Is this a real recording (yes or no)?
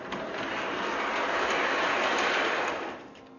yes